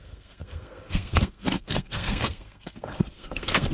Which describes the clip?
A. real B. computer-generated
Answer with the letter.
B